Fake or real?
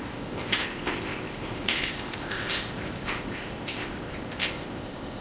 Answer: fake